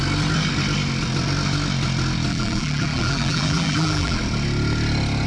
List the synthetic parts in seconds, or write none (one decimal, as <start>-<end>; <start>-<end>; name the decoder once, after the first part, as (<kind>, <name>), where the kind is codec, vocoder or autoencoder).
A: 2.3-4.2 (vocoder, BigVGAN v2)